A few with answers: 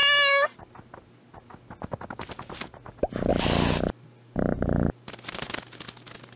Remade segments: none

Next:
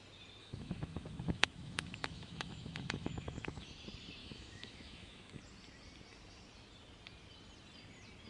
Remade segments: 0.4-3.7 (autoencoder, DAC-VAE); 4.2-5.4

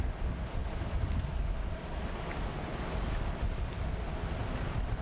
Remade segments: none

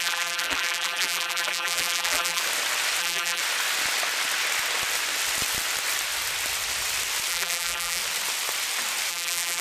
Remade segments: 0.0-2.4 (vocoder, BigVGAN v2); 3.0-3.4; 7.3-8.0; 9.1-9.6